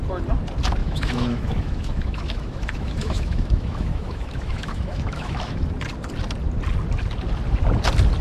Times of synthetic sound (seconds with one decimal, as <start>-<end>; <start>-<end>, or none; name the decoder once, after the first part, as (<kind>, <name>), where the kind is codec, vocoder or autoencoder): 0.8-5.7 (autoencoder, DAC-VAE)